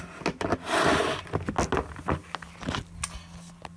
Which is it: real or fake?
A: real